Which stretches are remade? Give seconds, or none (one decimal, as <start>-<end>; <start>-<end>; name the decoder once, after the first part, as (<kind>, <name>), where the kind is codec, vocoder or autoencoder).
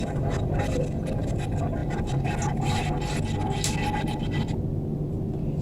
none